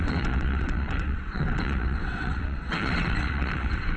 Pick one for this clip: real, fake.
fake